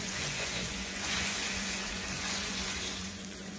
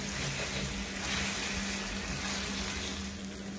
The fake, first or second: first